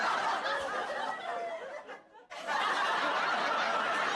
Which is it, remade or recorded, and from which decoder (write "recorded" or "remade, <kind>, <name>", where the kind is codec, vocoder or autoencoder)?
recorded